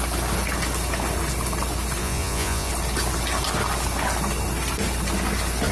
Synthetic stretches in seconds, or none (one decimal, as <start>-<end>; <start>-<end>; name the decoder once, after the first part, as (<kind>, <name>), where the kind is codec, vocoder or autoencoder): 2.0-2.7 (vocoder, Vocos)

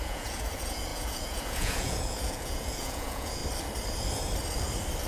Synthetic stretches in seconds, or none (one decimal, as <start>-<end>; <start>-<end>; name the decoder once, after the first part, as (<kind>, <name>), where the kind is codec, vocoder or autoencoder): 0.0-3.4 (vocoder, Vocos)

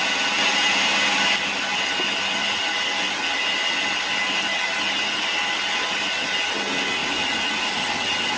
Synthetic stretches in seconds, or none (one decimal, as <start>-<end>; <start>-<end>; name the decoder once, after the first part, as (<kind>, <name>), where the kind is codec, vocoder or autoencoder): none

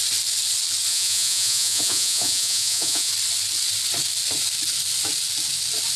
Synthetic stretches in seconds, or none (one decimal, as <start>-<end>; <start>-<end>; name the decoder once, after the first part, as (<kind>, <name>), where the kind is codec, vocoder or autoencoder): 0.9-3.1 (vocoder, Vocos)

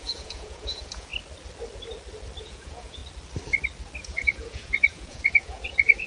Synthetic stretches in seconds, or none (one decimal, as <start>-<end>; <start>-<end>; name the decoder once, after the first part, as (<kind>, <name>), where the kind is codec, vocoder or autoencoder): 0.0-1.1 (vocoder, Vocos); 2.4-3.0; 4.0-6.1

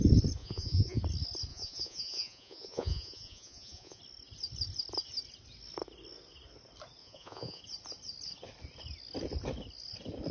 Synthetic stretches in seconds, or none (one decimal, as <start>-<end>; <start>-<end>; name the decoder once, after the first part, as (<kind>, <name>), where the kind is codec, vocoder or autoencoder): 0.4-1.0 (vocoder, Vocos); 1.5-4.0; 7.0-7.6

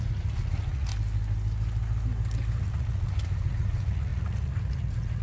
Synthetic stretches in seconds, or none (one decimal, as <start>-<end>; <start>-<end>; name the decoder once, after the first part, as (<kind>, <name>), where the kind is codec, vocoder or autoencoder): 0.0-0.9 (vocoder, Vocos); 2.6-5.2

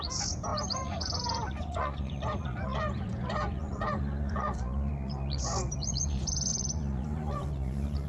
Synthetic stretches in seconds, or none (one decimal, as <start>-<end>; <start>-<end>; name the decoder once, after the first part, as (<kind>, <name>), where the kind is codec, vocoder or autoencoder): 0.0-8.1 (vocoder, Vocos)